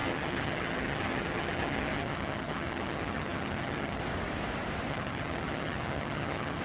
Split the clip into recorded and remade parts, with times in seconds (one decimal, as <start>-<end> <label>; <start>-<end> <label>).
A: 0.0-4.0 remade; 4.0-4.9 recorded; 4.9-6.6 remade